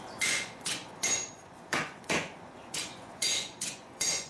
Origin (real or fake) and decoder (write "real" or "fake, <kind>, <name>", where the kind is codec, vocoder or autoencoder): fake, vocoder, Vocos